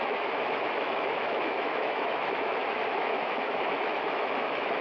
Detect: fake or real fake